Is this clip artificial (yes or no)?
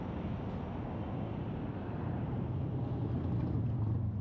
no